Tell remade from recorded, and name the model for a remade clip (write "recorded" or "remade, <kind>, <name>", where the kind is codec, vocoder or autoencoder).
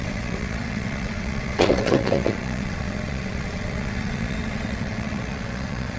remade, vocoder, WaveNeXt